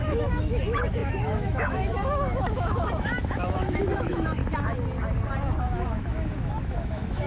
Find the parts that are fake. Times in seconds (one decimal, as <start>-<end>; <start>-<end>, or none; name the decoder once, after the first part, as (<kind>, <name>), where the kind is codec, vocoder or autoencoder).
0.0-4.4 (autoencoder, DAC-VAE); 5.6-7.3